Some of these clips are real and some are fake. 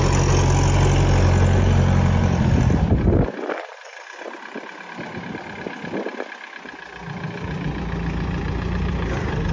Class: real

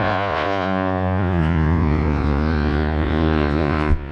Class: fake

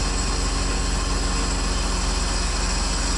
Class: real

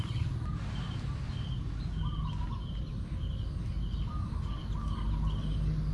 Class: real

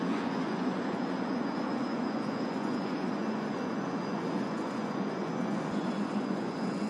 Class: fake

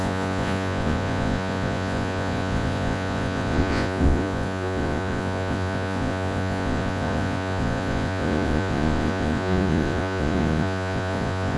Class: fake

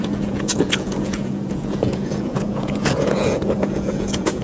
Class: fake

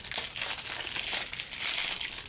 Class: real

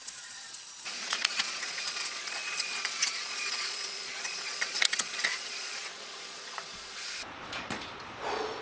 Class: fake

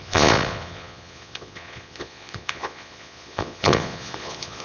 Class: fake